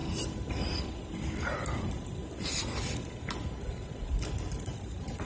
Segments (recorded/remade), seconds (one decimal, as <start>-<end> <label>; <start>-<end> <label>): 0.0-5.3 recorded